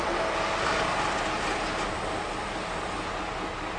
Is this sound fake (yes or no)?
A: no